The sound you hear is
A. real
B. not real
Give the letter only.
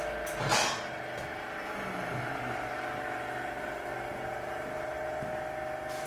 A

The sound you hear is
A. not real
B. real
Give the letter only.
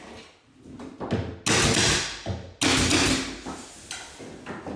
B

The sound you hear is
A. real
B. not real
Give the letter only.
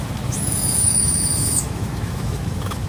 B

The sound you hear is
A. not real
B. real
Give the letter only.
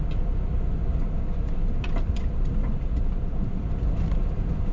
B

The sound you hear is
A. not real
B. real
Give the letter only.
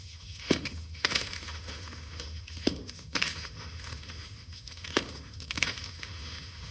A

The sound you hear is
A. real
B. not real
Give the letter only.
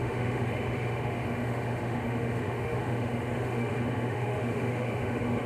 B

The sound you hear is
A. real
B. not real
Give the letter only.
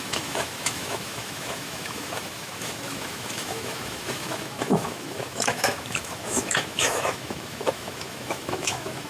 B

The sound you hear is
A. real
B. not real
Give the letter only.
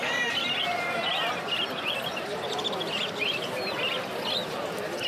A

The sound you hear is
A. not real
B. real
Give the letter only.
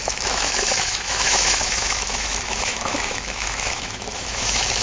A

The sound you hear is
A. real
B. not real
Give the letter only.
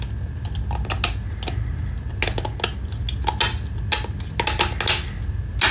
A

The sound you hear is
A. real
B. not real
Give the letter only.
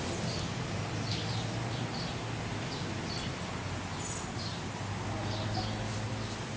A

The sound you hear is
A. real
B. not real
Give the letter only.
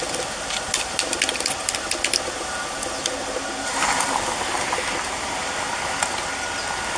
A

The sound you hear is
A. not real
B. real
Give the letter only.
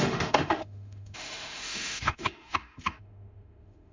A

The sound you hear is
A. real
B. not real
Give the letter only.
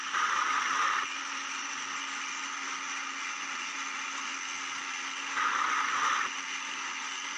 A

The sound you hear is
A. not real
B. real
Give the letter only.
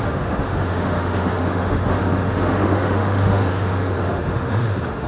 A